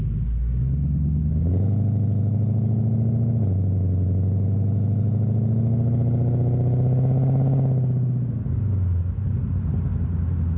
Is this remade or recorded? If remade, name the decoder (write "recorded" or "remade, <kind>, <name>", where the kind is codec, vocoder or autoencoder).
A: recorded